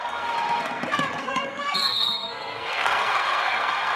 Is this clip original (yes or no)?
no